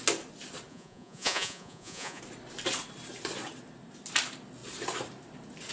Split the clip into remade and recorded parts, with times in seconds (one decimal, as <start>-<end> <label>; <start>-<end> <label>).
0.0-0.7 recorded; 0.7-2.2 remade; 2.2-5.7 recorded

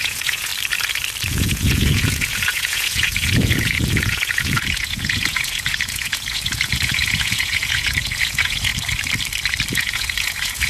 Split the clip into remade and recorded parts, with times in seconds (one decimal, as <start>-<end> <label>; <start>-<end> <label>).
0.0-0.5 remade; 0.5-1.3 recorded; 1.3-8.7 remade; 8.7-9.7 recorded; 9.7-10.7 remade

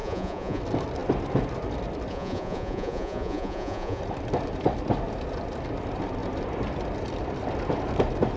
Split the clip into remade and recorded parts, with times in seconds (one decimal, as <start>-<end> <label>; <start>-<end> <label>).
0.0-0.6 remade; 0.6-2.1 recorded; 2.1-4.0 remade; 4.0-8.4 recorded

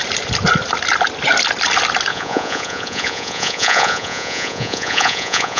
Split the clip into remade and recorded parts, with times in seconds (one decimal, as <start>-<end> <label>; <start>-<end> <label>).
0.0-2.1 recorded; 2.1-5.6 remade

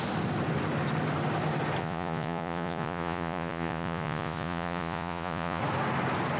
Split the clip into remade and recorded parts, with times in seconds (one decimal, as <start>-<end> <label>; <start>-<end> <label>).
0.0-1.8 recorded; 1.8-5.6 remade; 5.6-6.4 recorded

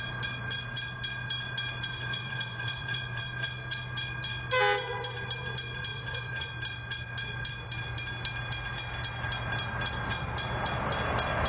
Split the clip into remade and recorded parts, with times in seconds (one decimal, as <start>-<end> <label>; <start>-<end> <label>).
0.0-1.9 recorded; 1.9-3.2 remade; 3.2-5.9 recorded; 5.9-6.5 remade; 6.5-11.5 recorded

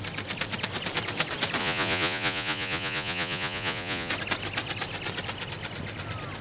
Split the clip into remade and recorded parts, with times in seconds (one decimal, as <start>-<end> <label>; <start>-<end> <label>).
0.0-1.6 recorded; 1.6-4.1 remade; 4.1-6.4 recorded

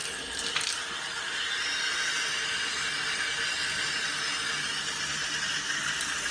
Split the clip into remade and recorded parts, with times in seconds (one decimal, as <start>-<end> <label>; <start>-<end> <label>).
0.0-6.3 recorded